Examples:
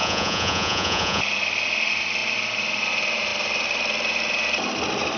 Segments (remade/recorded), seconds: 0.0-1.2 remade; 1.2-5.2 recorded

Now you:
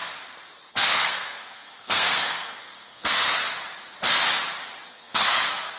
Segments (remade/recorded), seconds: 0.0-0.7 recorded; 0.7-3.4 remade; 3.4-4.9 recorded; 4.9-5.8 remade

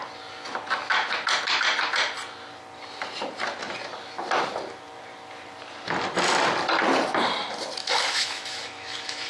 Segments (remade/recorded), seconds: 0.0-7.8 recorded; 7.8-9.3 remade

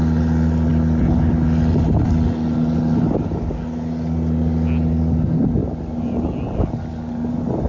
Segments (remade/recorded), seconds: 0.0-7.7 recorded

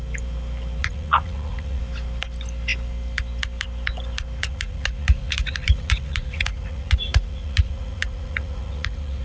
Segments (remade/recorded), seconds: 0.0-0.8 recorded; 0.8-1.8 remade; 1.8-4.4 recorded; 4.4-9.2 remade